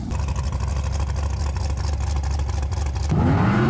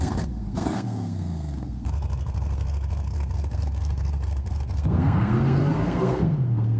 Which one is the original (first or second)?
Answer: first